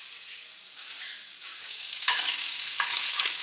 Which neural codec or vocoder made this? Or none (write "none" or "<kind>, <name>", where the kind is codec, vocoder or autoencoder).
codec, DAC